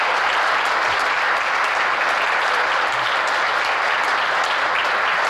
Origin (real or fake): real